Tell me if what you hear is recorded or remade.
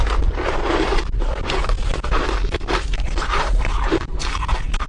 remade